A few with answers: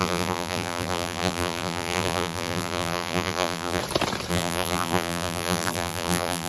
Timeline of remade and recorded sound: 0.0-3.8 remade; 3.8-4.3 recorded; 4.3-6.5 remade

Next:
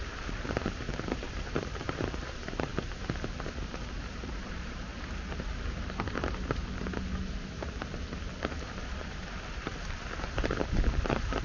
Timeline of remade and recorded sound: 0.0-2.7 remade; 2.7-3.4 recorded; 3.4-4.9 remade; 4.9-8.4 recorded; 8.4-11.4 remade

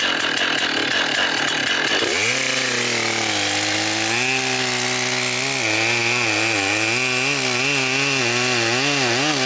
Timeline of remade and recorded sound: 0.0-9.5 recorded

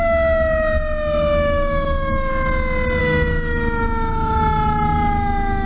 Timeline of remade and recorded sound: 0.0-2.3 remade; 2.3-3.0 recorded; 3.0-5.7 remade